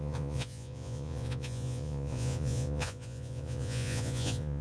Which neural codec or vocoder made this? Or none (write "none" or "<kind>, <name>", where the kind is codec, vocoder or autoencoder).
vocoder, Vocos